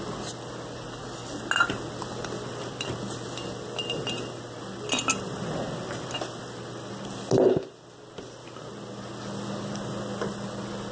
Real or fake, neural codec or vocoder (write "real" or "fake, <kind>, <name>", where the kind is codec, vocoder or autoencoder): real